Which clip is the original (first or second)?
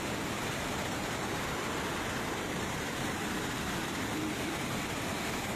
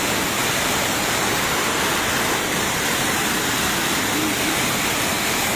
second